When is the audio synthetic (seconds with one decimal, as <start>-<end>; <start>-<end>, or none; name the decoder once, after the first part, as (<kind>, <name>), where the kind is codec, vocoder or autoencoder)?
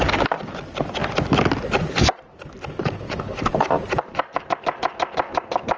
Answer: none